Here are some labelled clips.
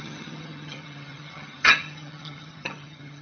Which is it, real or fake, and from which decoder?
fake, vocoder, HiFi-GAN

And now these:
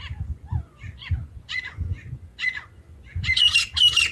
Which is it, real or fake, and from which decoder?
fake, vocoder, Vocos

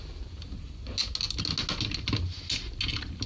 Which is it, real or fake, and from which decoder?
real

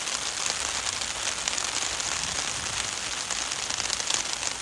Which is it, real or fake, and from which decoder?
real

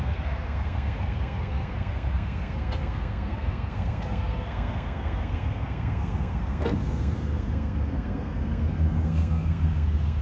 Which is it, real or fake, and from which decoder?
fake, codec, SNAC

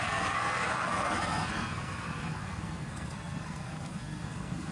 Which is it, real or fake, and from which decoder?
fake, codec, SNAC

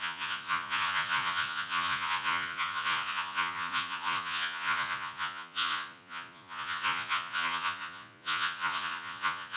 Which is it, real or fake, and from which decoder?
fake, vocoder, Vocos